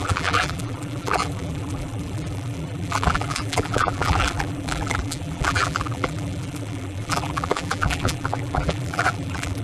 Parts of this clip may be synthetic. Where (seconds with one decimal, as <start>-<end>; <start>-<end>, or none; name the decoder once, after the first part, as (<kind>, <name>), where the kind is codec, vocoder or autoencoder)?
0.0-9.6 (vocoder, BigVGAN v2)